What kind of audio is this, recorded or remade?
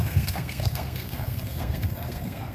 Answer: remade